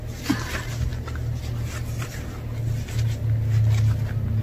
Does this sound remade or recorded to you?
recorded